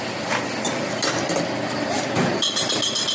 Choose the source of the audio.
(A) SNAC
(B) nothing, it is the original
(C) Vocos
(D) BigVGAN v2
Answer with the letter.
B